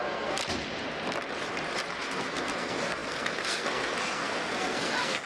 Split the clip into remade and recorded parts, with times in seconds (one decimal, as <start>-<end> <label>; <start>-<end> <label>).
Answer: 0.0-0.4 remade; 0.4-2.0 recorded; 2.0-5.3 remade

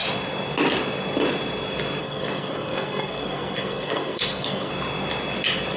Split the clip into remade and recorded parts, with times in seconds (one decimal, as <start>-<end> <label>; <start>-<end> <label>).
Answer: 0.0-2.0 recorded; 2.0-4.7 remade; 4.7-5.8 recorded

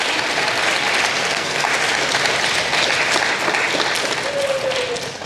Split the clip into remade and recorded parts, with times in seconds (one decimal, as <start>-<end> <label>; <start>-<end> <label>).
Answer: 0.0-1.2 recorded; 1.2-1.7 remade; 1.7-5.3 recorded

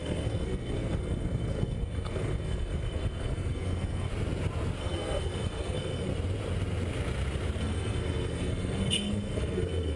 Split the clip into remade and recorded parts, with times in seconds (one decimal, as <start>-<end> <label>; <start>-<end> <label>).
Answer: 0.0-4.1 remade; 4.1-4.8 recorded; 4.8-6.1 remade; 6.1-7.6 recorded; 7.6-10.0 remade